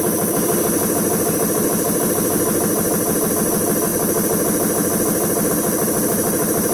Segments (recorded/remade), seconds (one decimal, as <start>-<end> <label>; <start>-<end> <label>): 0.0-6.7 recorded